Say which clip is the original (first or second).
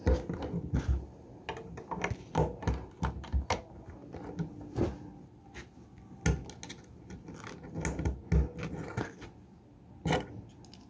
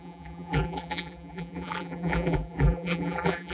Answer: first